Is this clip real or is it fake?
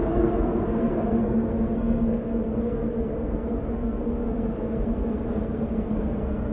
fake